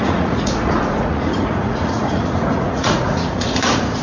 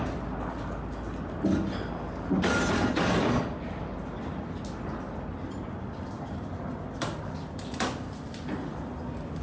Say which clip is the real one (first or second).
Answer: second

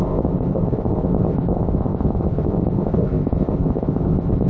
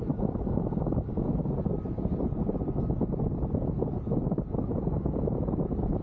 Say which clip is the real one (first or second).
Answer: second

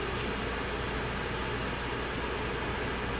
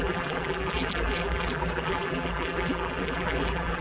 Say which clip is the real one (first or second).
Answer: first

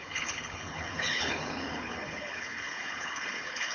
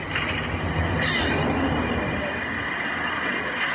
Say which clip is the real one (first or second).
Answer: second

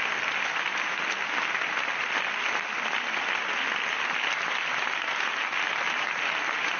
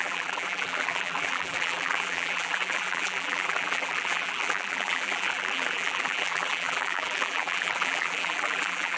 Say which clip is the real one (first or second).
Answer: first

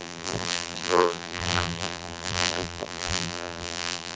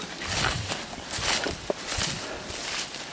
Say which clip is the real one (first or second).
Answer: second